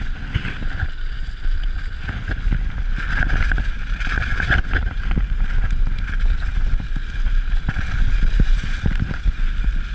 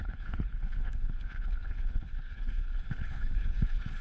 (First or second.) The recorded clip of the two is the first